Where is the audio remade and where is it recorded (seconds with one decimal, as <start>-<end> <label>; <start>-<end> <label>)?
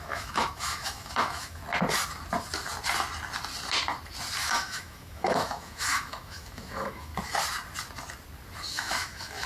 0.0-1.6 remade; 1.6-4.4 recorded; 4.4-7.1 remade; 7.1-8.7 recorded; 8.7-9.5 remade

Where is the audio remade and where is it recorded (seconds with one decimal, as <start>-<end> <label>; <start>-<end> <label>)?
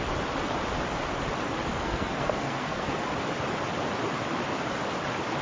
0.0-1.7 recorded; 1.7-2.9 remade; 2.9-5.4 recorded